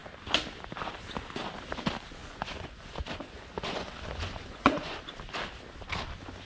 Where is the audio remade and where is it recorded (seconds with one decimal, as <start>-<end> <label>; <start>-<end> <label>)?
0.0-2.2 recorded; 2.2-5.0 remade; 5.0-6.4 recorded